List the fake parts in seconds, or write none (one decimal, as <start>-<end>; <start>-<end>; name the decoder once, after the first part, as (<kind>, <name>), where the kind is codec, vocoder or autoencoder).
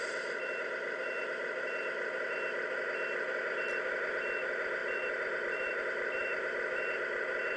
4.8-5.8 (vocoder, BigVGAN v2); 6.2-7.0